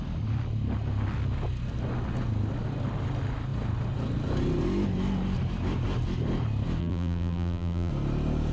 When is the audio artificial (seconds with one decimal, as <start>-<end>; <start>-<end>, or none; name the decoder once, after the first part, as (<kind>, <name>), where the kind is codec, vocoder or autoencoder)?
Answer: 6.8-7.9 (vocoder, BigVGAN v2)